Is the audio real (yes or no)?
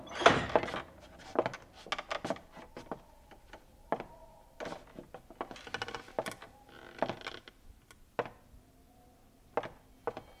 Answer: yes